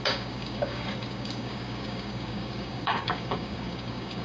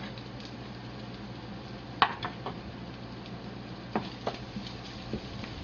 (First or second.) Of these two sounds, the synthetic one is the first